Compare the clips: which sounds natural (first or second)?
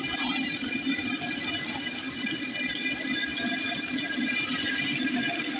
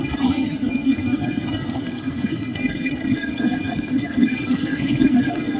first